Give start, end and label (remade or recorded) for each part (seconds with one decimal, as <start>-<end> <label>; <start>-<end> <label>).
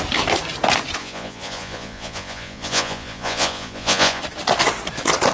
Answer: 0.0-1.0 recorded; 1.0-4.2 remade; 4.2-5.3 recorded